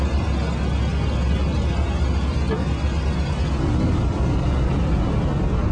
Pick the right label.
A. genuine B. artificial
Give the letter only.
A